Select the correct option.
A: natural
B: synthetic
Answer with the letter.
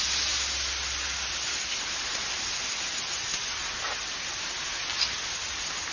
A